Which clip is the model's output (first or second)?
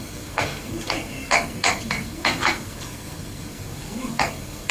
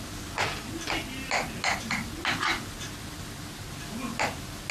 first